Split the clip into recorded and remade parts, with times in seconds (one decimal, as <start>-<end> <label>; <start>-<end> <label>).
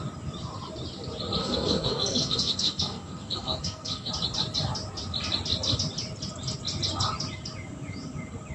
0.0-1.4 recorded; 1.4-4.1 remade; 4.1-8.5 recorded